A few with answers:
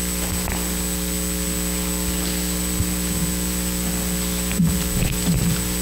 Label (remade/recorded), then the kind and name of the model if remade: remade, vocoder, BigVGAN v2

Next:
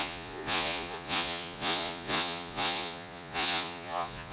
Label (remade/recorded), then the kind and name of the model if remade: remade, vocoder, Vocos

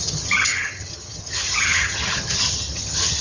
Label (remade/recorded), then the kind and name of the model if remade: remade, vocoder, HiFi-GAN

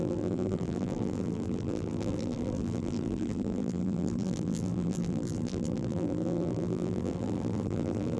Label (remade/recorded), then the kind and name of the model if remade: remade, vocoder, BigVGAN v2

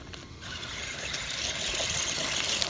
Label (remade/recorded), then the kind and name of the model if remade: recorded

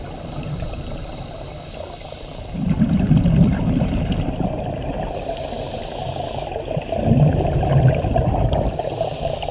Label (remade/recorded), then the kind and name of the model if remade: recorded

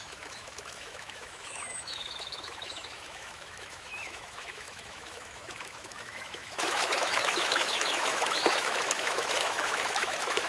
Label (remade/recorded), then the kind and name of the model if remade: remade, autoencoder, DAC-VAE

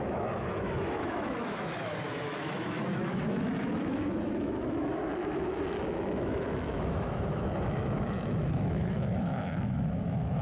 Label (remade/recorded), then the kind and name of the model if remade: remade, autoencoder, DAC-VAE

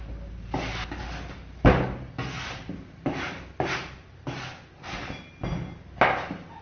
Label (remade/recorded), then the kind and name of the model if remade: recorded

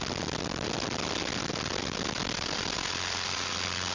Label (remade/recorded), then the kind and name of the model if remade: recorded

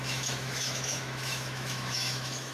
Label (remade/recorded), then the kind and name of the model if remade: remade, autoencoder, DAC-VAE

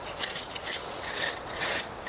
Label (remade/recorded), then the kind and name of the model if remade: remade, vocoder, WaveNeXt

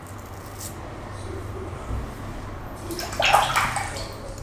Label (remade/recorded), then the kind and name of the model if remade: remade, vocoder, BigVGAN v2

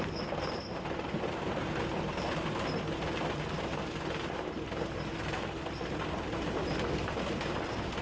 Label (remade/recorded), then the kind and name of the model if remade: recorded